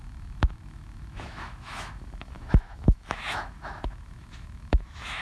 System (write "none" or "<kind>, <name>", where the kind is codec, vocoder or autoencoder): autoencoder, DAC-VAE